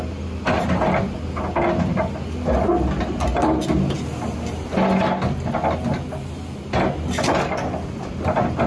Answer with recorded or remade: recorded